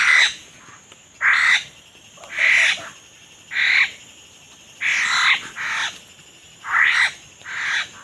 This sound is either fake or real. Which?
real